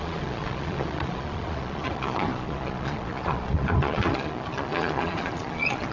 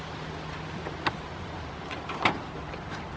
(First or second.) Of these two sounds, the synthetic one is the first